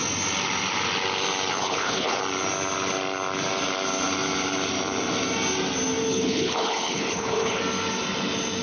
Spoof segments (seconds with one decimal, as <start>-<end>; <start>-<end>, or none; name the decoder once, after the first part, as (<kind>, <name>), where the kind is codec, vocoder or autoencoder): 1.5-2.2 (codec, HILCodec); 6.1-7.6